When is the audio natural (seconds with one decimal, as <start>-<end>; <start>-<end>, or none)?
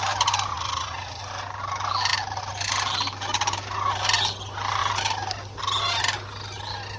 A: 0.0-0.5; 1.2-7.0